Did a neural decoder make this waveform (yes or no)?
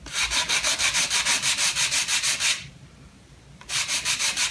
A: yes